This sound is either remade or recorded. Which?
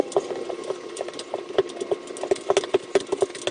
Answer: recorded